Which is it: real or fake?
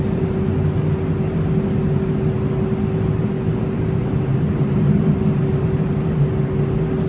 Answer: real